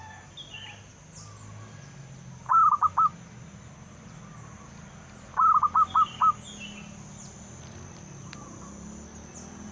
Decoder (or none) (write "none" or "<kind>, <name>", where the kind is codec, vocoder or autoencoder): none